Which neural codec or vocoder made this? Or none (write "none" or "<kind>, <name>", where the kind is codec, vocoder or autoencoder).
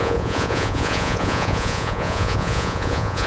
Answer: vocoder, Vocos